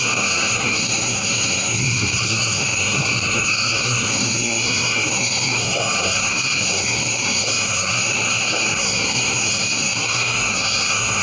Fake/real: fake